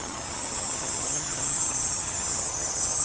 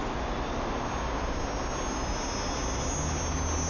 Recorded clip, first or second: second